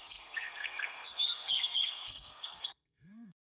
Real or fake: fake